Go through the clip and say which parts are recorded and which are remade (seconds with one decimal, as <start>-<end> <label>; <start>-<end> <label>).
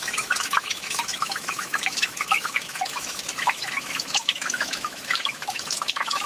0.0-6.3 remade